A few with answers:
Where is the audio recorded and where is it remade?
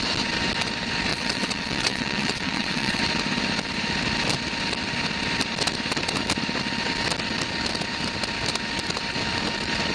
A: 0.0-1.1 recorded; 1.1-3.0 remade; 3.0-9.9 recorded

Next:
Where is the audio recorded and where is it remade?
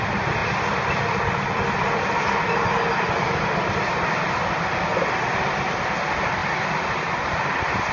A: 0.0-7.9 recorded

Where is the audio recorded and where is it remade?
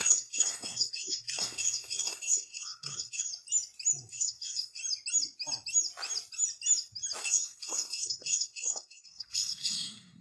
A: 0.0-3.3 remade; 3.3-4.1 recorded; 4.1-4.8 remade; 4.8-7.2 recorded; 7.2-10.2 remade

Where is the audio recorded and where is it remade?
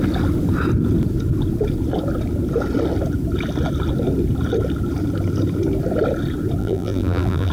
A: 0.0-6.6 recorded; 6.6-7.5 remade